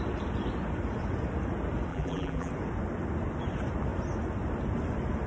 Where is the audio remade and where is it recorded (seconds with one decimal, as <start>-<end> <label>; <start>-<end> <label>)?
0.0-1.9 recorded; 1.9-2.5 remade; 2.5-5.3 recorded